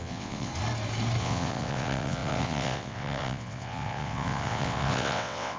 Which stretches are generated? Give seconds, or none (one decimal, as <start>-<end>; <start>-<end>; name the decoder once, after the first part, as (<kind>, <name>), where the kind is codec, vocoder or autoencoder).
0.0-0.5 (vocoder, WaveNeXt); 1.2-5.6